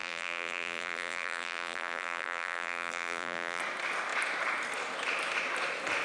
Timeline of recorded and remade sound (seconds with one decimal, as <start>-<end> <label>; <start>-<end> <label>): 0.0-3.6 remade; 3.6-6.0 recorded